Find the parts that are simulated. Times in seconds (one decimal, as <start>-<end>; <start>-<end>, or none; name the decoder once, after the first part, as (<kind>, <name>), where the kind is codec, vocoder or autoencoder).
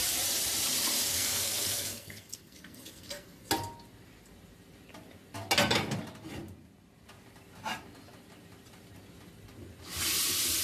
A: 1.1-3.5 (codec, SNAC)